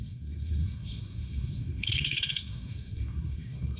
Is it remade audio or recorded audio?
remade